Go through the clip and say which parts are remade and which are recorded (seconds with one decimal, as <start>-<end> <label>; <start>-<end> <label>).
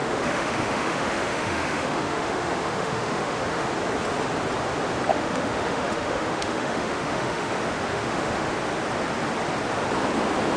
0.0-3.7 remade; 3.7-5.1 recorded; 5.1-7.5 remade; 7.5-7.9 recorded; 7.9-8.5 remade; 8.5-10.6 recorded